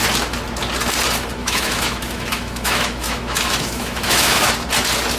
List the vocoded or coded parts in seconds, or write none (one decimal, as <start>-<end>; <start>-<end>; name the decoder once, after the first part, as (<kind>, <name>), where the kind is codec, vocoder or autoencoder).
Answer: 1.4-4.5 (autoencoder, DAC-VAE)